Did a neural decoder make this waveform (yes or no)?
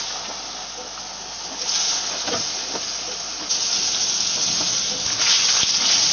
no